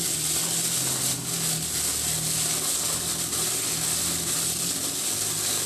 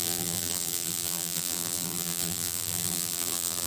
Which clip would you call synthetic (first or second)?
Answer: second